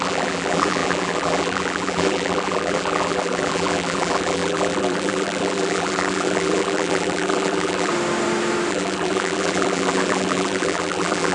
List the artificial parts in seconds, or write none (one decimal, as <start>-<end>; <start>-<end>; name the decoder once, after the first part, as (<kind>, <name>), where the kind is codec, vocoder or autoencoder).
0.0-7.9 (vocoder, BigVGAN v2); 8.7-11.3